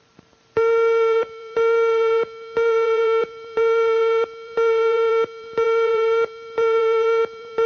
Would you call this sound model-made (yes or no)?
yes